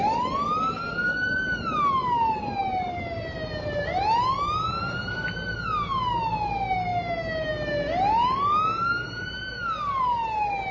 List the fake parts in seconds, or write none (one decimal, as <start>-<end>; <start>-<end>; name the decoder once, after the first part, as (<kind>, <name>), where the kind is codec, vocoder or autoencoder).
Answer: none

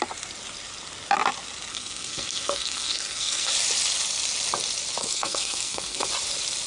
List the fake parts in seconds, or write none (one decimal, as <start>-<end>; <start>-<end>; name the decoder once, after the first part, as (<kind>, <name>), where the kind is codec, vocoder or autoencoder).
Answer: 1.7-3.5 (codec, SNAC); 5.0-6.1

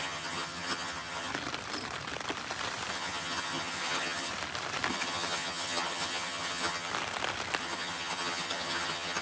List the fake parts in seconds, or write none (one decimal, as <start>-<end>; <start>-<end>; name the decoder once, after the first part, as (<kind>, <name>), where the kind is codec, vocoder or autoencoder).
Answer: 0.0-1.3 (vocoder, HiFi-GAN); 2.9-4.3; 4.9-6.9; 7.6-9.2

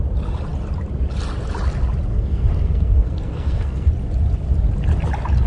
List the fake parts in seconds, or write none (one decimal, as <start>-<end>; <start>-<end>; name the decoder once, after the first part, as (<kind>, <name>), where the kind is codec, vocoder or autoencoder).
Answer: 2.1-3.9 (codec, SNAC)

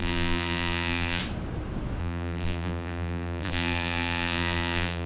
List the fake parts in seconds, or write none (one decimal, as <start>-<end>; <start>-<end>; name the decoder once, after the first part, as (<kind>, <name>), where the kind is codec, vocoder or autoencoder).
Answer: 0.0-1.2 (vocoder, BigVGAN v2); 2.0-5.1

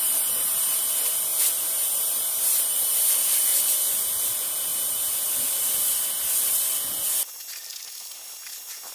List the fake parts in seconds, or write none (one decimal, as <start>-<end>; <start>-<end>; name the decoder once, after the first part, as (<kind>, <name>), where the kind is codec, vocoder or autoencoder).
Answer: none

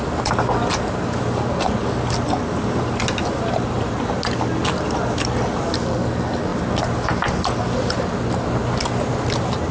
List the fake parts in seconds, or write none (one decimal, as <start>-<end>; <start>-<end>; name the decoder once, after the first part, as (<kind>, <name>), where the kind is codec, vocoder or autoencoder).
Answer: none